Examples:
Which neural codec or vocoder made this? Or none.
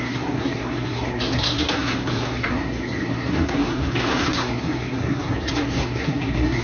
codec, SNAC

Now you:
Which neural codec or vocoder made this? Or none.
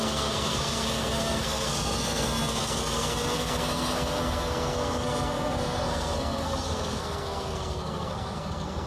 codec, SNAC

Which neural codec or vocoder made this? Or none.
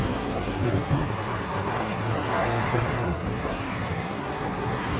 codec, SNAC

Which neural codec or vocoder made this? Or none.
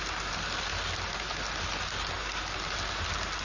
none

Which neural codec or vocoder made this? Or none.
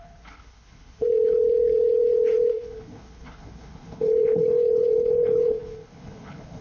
codec, HILCodec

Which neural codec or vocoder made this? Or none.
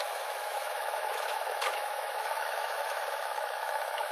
autoencoder, DAC-VAE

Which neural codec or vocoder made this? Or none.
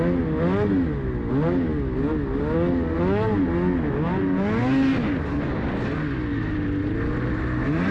none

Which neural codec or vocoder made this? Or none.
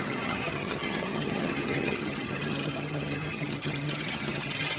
vocoder, HiFi-GAN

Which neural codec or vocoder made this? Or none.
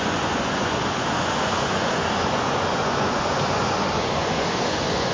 vocoder, Vocos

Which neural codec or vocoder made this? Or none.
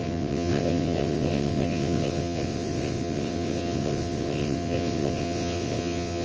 vocoder, WaveNeXt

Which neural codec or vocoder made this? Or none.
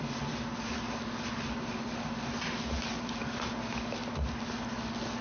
none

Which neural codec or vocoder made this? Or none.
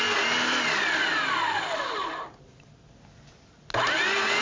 none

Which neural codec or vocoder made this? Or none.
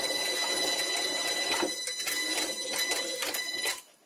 none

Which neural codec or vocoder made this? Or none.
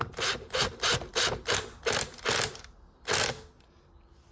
none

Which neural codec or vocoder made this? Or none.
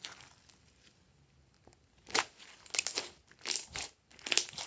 none